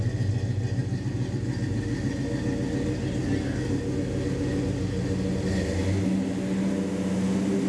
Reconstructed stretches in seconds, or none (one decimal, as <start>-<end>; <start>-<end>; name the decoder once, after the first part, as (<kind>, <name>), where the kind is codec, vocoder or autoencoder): none